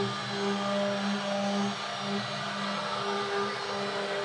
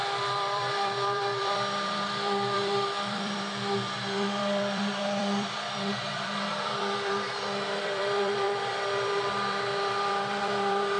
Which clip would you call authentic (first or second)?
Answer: first